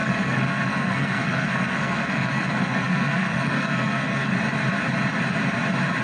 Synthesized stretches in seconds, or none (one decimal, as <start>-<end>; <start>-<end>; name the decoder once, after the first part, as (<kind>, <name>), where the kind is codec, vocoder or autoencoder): 0.0-4.3 (codec, SNAC)